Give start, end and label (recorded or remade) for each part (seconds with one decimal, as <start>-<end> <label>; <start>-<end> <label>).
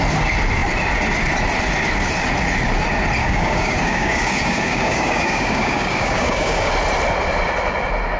0.0-3.2 recorded; 3.2-6.7 remade; 6.7-8.2 recorded